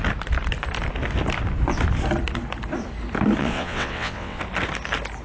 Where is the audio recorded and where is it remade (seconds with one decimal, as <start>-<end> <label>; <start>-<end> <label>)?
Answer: 0.0-3.4 recorded; 3.4-4.4 remade; 4.4-5.2 recorded

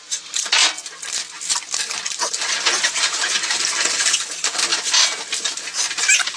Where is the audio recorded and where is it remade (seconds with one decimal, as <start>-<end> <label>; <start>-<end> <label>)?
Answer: 0.0-0.6 remade; 0.6-2.9 recorded; 2.9-4.7 remade; 4.7-5.3 recorded; 5.3-6.4 remade

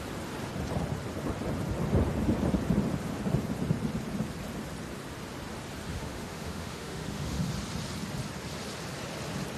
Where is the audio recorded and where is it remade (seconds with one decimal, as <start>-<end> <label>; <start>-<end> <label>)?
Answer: 0.0-5.9 recorded; 5.9-7.5 remade; 7.5-9.6 recorded

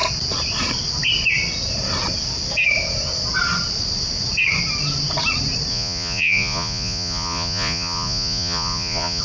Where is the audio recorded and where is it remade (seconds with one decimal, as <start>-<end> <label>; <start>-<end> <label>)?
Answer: 0.0-5.7 recorded; 5.7-9.2 remade

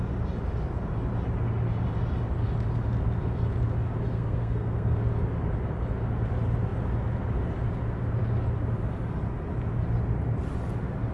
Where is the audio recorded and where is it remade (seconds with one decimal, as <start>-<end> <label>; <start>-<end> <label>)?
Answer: 0.0-4.1 recorded; 4.1-5.0 remade; 5.0-11.1 recorded

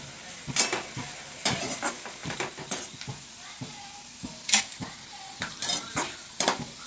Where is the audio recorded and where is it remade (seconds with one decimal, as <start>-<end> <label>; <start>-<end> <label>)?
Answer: 0.0-6.9 recorded

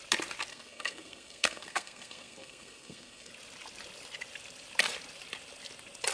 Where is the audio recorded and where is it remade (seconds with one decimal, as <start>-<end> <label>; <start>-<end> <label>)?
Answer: 0.0-0.5 recorded; 0.5-3.3 remade; 3.3-6.1 recorded

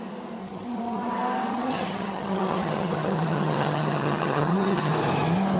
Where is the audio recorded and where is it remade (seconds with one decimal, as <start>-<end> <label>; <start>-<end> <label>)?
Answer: 0.0-0.4 recorded; 0.4-1.1 remade; 1.1-1.5 recorded; 1.5-4.9 remade; 4.9-5.6 recorded